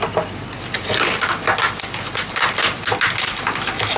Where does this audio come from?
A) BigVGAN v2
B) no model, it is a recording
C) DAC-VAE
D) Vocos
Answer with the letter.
B